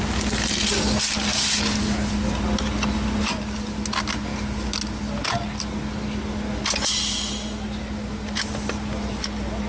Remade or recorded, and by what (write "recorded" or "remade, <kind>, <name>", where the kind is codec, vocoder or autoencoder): recorded